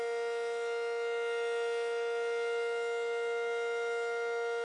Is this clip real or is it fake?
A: real